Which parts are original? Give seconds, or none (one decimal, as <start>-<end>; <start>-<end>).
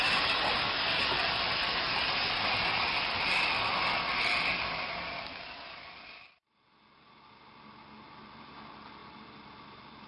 0.0-10.1